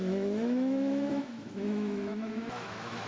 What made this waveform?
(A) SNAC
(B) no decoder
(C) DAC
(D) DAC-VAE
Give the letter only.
D